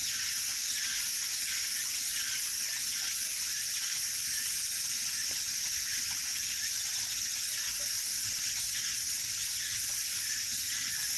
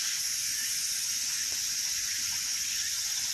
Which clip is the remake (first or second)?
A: second